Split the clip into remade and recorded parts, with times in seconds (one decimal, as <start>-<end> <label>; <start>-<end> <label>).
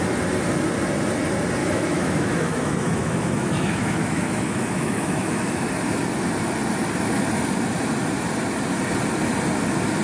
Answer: 0.0-1.6 recorded; 1.6-5.7 remade; 5.7-10.0 recorded